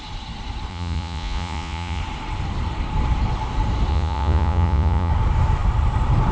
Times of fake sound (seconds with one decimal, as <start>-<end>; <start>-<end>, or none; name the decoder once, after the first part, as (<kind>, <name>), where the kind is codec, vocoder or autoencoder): 0.7-2.0 (vocoder, Vocos); 3.9-5.1